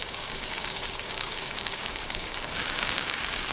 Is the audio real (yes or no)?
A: no